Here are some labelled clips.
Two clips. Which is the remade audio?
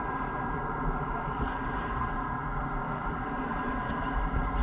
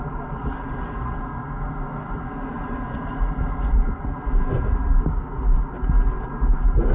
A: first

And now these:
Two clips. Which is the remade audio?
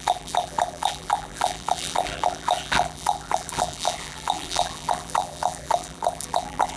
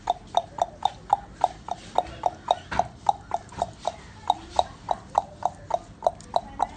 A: first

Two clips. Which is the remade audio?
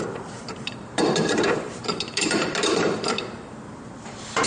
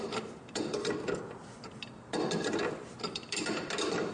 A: first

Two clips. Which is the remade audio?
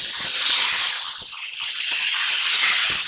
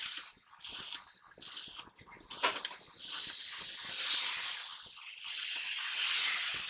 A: first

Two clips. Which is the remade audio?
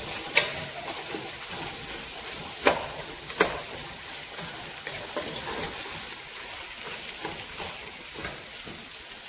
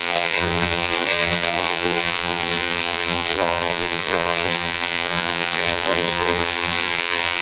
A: second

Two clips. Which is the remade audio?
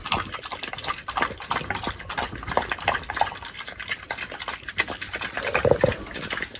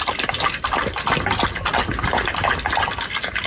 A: first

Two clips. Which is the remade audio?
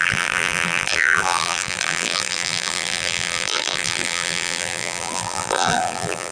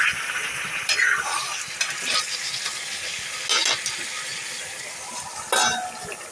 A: first